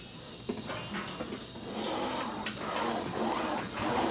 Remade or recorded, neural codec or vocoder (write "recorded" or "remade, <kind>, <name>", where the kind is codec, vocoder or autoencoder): recorded